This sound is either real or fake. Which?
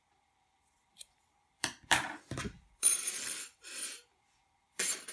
fake